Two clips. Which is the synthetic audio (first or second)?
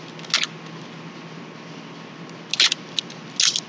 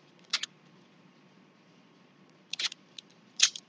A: second